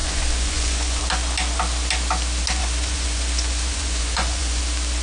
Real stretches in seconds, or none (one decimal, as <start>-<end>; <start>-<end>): 1.0-2.6; 4.6-5.0